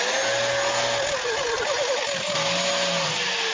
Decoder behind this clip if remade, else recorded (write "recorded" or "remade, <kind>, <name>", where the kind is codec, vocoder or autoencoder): recorded